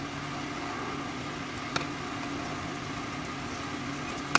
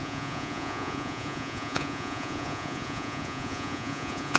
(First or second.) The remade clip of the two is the second